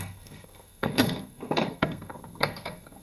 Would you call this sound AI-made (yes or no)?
yes